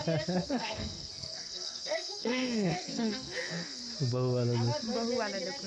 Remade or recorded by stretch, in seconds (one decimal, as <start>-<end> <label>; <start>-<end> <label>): 0.0-0.4 recorded; 0.4-3.8 remade; 3.8-5.7 recorded